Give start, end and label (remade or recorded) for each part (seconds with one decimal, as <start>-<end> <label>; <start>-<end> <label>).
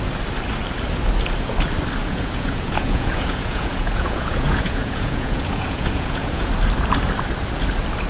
0.0-2.0 recorded; 2.0-6.5 remade; 6.5-8.1 recorded